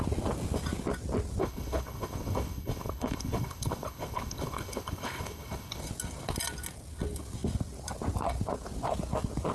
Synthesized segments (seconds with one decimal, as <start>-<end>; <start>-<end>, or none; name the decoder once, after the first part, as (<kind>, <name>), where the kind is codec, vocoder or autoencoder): 1.4-5.8 (codec, HILCodec)